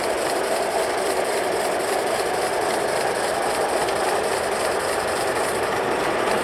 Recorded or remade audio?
recorded